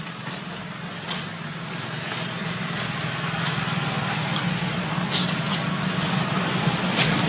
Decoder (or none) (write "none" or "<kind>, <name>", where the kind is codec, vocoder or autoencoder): none